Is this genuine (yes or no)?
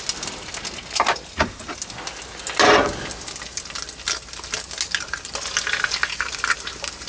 yes